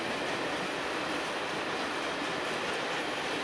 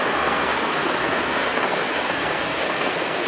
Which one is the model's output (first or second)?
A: second